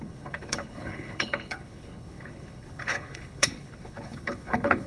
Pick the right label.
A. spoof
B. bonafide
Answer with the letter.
A